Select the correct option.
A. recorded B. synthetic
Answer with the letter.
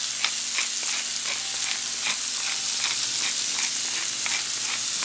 A